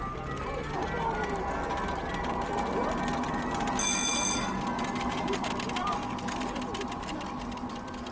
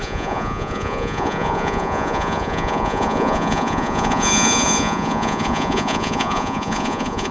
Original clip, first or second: first